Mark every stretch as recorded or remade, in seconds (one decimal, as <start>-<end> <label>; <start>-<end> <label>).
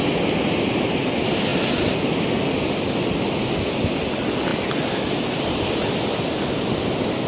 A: 0.0-7.3 recorded